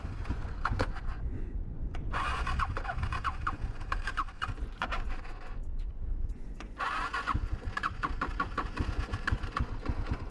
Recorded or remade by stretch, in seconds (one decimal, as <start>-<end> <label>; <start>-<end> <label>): 0.0-10.3 remade